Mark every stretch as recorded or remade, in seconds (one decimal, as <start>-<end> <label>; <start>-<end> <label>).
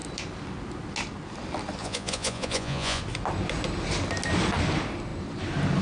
0.0-1.8 recorded; 1.8-3.0 remade; 3.0-5.8 recorded